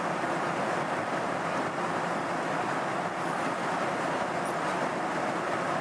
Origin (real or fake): real